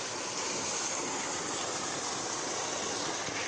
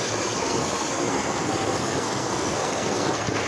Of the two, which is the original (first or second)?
first